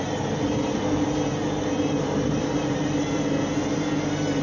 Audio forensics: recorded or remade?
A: recorded